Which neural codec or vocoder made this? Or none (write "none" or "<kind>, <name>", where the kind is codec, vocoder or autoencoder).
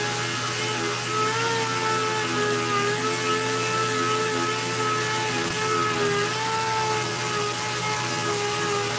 none